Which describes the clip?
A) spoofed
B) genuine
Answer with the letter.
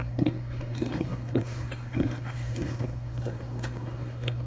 A